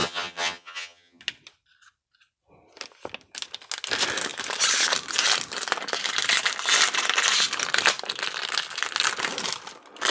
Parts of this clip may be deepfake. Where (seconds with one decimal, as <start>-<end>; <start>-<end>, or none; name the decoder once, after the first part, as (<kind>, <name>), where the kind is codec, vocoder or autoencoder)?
0.0-1.2 (vocoder, HiFi-GAN)